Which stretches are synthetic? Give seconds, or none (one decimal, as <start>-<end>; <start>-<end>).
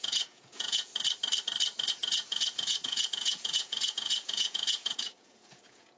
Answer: 0.0-0.9; 1.9-6.0